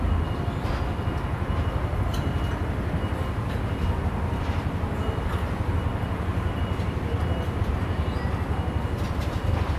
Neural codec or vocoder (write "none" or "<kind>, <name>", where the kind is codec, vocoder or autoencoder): none